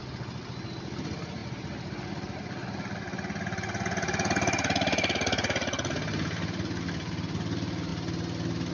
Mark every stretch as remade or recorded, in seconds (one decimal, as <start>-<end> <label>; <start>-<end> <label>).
0.0-8.7 recorded